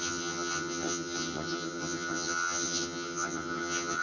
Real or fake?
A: fake